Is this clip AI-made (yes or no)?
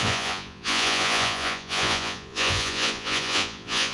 yes